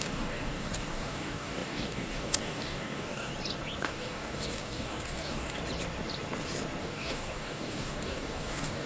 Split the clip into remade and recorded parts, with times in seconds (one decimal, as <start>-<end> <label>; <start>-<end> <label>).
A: 0.0-3.3 remade; 3.3-3.8 recorded; 3.8-5.6 remade; 5.6-6.8 recorded; 6.8-8.9 remade